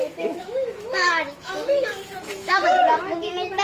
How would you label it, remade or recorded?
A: remade